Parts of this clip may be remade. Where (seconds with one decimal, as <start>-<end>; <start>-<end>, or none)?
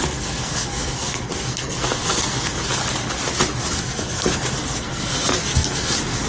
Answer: 0.0-2.8; 3.7-6.3